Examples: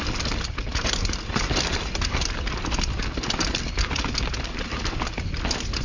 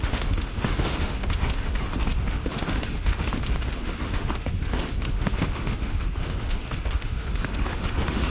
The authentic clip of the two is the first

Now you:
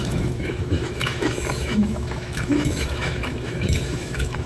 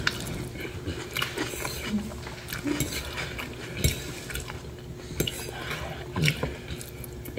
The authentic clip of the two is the second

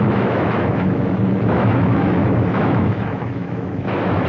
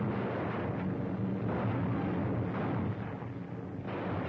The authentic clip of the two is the second